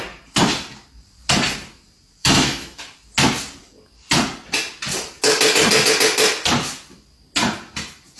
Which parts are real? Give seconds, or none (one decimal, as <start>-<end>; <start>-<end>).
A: 0.0-2.2; 2.8-8.2